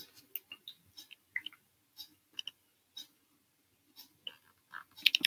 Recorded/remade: recorded